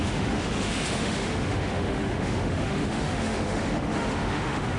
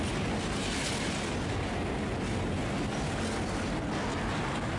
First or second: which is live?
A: second